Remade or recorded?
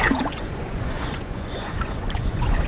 remade